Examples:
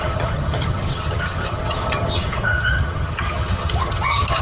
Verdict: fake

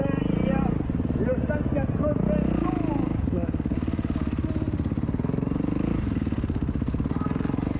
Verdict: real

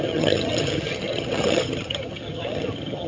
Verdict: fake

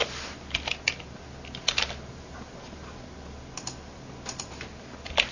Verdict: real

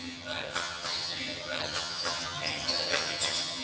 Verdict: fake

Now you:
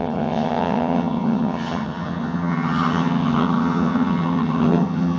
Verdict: fake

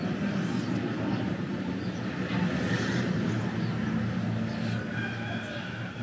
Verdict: real